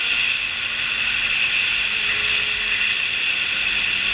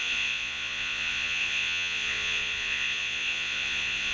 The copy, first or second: second